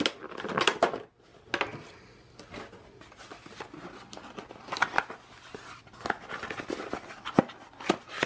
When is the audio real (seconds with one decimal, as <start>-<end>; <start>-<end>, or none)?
0.0-8.3